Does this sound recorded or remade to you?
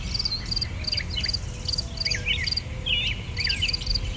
recorded